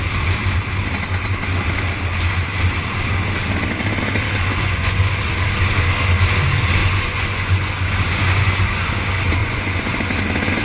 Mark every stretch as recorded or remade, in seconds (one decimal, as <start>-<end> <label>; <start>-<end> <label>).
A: 0.0-4.5 recorded; 4.5-5.2 remade; 5.2-6.8 recorded; 6.8-9.0 remade; 9.0-9.4 recorded; 9.4-10.0 remade; 10.0-10.6 recorded